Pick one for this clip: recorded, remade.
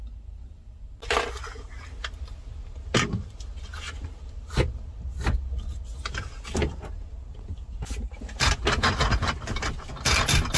recorded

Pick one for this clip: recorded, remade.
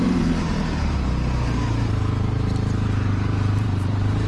remade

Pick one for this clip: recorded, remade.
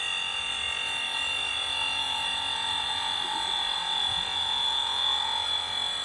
recorded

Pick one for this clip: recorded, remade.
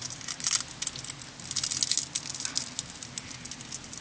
recorded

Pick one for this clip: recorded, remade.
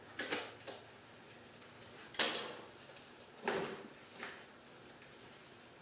recorded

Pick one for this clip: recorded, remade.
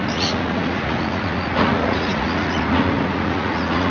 remade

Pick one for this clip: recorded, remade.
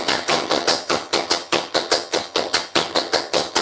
remade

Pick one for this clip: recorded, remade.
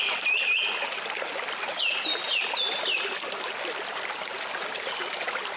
recorded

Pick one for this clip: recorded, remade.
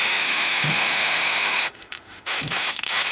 remade